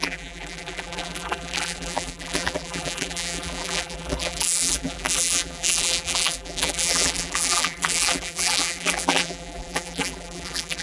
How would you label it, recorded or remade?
remade